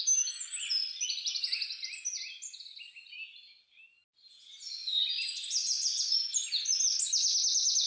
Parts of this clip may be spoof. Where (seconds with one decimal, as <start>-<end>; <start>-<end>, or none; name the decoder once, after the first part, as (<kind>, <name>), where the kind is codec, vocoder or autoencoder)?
none